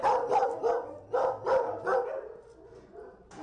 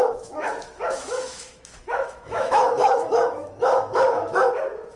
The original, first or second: first